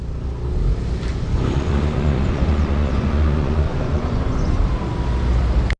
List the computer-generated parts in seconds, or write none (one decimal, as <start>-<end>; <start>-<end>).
1.1-4.6

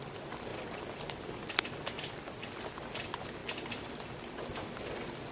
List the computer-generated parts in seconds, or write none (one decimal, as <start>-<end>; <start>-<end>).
3.4-5.3

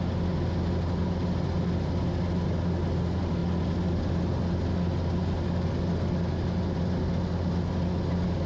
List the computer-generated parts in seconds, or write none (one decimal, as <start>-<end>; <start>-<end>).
none

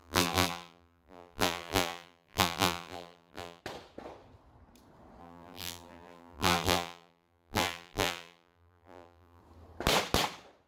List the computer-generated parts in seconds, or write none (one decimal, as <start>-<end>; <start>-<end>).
0.0-3.6; 5.2-9.4